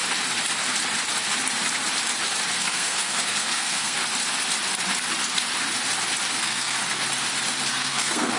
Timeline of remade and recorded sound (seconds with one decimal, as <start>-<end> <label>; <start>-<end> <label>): 0.0-2.6 recorded; 2.6-4.0 remade; 4.0-6.3 recorded; 6.3-6.8 remade; 6.8-7.7 recorded; 7.7-8.4 remade